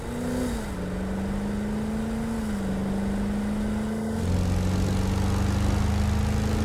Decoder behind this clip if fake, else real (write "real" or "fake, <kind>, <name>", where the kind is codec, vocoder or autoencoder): real